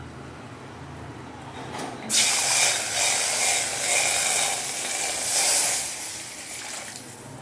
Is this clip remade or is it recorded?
recorded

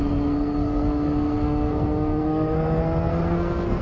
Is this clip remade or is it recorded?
remade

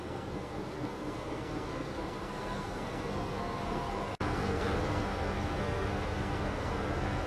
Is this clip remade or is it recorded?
remade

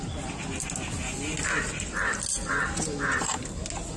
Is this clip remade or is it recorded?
recorded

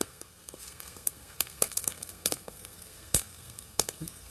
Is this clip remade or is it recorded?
remade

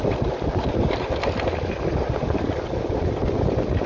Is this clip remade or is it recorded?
recorded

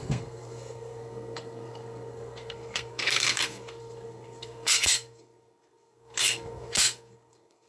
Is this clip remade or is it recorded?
remade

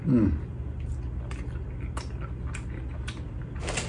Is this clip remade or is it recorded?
recorded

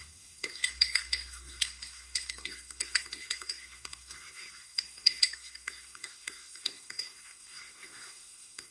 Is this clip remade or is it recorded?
remade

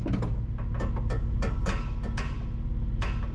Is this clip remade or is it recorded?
recorded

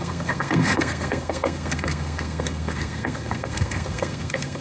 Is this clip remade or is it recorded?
remade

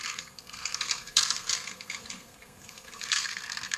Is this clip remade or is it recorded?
remade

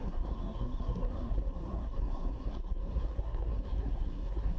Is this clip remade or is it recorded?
remade